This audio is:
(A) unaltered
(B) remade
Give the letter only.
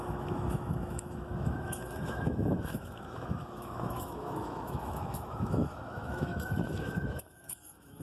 B